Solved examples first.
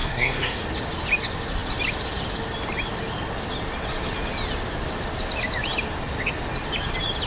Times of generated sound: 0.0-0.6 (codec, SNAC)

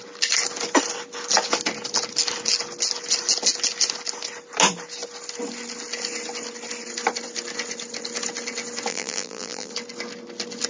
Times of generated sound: 8.9-9.7 (vocoder, BigVGAN v2)

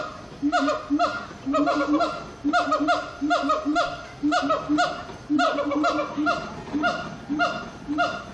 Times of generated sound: 3.7-4.4 (vocoder, BigVGAN v2)

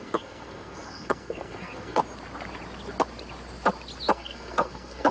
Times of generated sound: 0.0-2.0 (codec, SNAC); 4.1-5.1

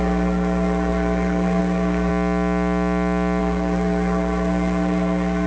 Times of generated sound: 0.0-2.1 (codec, SNAC); 3.4-5.5